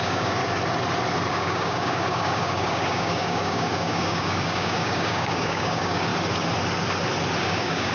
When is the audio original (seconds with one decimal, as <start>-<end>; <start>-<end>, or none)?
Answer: 0.4-1.3; 6.1-7.4